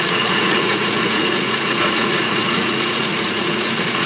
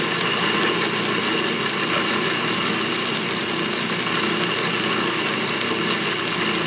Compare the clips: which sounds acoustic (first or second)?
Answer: second